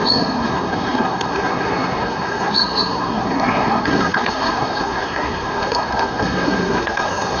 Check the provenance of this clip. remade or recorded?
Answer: remade